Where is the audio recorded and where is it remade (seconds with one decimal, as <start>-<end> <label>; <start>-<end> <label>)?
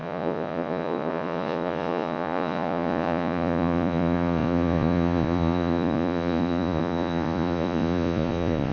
0.0-8.7 remade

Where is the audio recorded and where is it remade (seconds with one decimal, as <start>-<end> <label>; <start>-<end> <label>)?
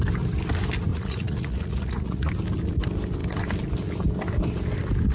0.0-0.9 recorded; 0.9-2.3 remade; 2.3-5.1 recorded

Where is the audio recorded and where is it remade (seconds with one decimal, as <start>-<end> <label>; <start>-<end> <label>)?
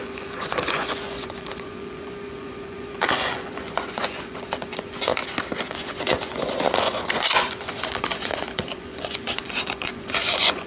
0.0-5.2 remade; 5.2-5.7 recorded; 5.7-10.7 remade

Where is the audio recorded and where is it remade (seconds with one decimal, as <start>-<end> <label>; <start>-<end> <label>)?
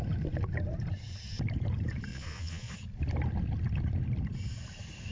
0.0-2.1 recorded; 2.1-2.7 remade; 2.7-5.1 recorded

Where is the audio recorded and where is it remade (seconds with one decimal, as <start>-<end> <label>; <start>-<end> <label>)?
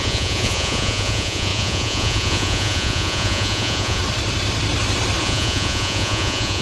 0.0-4.0 remade; 4.0-5.2 recorded; 5.2-6.6 remade